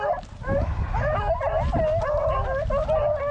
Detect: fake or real real